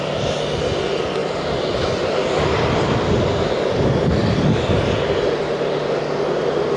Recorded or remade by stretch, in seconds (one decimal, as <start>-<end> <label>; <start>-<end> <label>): 0.0-6.8 recorded